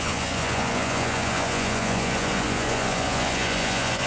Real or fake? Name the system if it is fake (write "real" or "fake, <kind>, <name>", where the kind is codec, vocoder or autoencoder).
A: fake, vocoder, Vocos